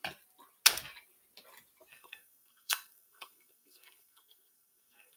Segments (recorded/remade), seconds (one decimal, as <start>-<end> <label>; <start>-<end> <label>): 0.0-1.9 recorded; 1.9-5.2 remade